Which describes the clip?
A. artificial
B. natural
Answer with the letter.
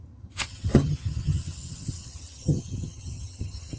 A